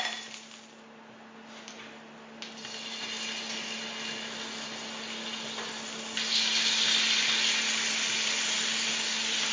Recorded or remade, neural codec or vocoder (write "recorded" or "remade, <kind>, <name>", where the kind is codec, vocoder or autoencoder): recorded